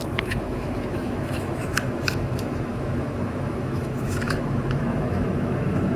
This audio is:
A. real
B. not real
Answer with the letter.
B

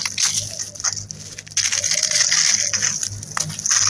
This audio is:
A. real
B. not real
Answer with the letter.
A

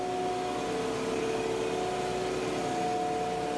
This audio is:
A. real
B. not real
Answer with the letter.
A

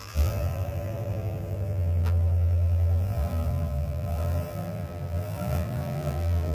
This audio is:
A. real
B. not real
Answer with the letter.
B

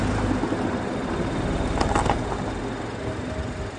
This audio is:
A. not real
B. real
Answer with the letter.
B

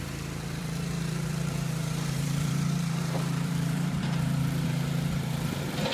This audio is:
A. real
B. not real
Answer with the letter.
B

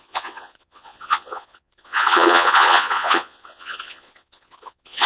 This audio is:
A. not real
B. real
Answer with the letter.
A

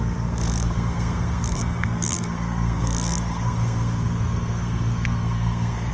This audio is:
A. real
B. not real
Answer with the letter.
B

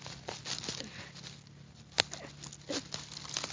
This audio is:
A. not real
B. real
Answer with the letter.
B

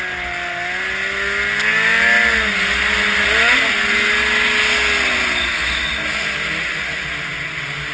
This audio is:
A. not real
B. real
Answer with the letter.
B